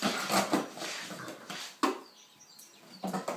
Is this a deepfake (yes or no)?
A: no